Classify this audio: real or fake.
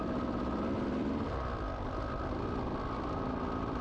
fake